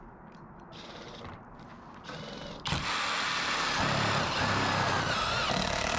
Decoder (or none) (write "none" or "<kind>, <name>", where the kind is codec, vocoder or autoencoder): none